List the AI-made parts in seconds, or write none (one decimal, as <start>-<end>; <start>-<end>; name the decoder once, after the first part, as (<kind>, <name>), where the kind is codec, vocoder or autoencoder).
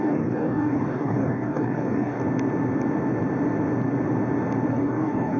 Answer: 0.0-2.2 (codec, DAC); 4.7-5.4